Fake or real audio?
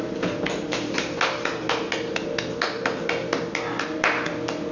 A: real